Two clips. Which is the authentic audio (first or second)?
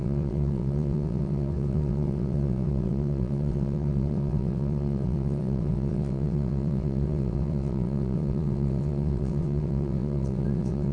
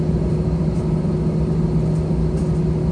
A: second